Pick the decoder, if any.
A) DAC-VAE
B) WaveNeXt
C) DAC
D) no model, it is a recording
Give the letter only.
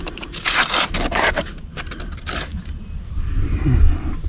D